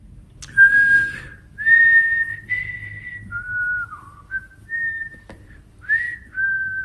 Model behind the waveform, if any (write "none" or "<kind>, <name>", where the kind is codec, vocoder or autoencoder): none